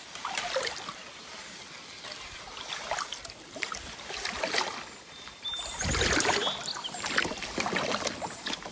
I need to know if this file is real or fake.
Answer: real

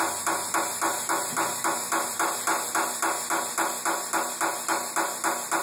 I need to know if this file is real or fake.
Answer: real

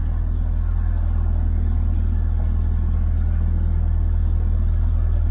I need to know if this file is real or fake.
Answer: real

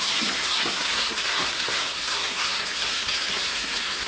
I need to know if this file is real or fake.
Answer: fake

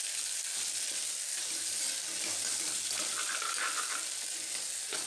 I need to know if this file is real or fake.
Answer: real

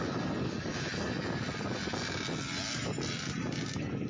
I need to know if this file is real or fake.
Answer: real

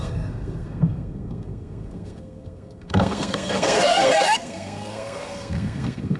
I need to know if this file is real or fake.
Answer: fake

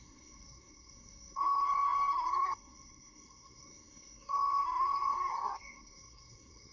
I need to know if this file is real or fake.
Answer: fake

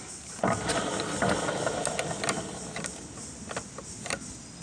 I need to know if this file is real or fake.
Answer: real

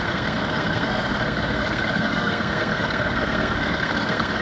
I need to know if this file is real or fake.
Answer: fake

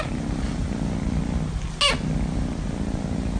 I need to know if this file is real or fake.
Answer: real